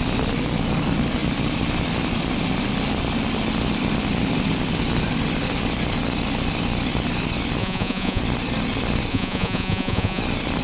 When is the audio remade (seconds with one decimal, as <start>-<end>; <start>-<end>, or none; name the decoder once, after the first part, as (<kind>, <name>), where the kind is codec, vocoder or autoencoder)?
7.6-8.2 (vocoder, Vocos); 9.1-10.2